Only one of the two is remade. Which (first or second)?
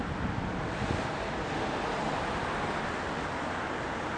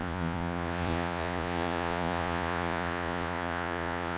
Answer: second